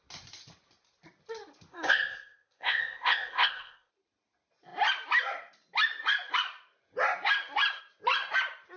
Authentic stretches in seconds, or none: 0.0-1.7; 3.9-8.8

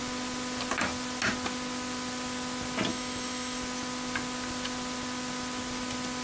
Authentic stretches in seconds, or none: 0.0-2.9; 3.6-6.2

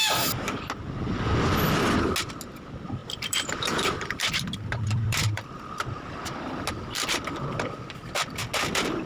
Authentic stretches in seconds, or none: 0.0-3.0; 5.5-9.1

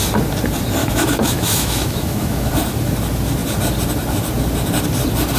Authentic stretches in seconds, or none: 0.0-0.8; 2.5-5.4